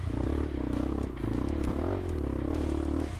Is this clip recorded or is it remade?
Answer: recorded